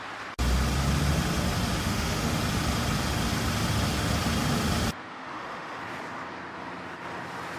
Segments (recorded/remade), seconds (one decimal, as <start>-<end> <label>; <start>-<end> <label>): 0.0-1.8 recorded; 1.8-2.4 remade; 2.4-5.1 recorded; 5.1-5.8 remade; 5.8-7.6 recorded